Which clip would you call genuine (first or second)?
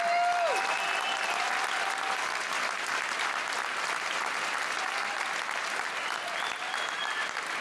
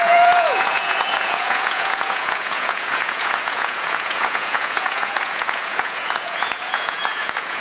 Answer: first